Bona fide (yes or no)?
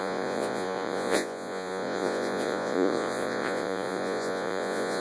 no